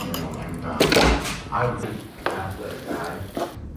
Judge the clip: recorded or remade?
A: recorded